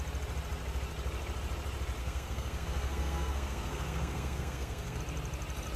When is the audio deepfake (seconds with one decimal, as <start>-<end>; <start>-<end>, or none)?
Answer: 2.0-5.0